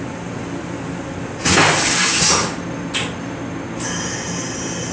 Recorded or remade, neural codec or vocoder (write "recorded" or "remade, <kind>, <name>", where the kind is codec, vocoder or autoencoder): recorded